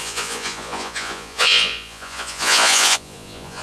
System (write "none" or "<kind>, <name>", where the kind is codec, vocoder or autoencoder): vocoder, Vocos